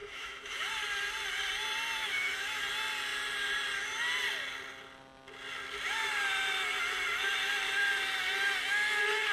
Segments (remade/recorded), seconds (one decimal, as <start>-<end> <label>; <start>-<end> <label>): 0.0-0.7 remade; 0.7-2.0 recorded; 2.0-2.6 remade; 2.6-9.3 recorded